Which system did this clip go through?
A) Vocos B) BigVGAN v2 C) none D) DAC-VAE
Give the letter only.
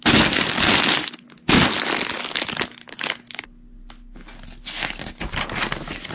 C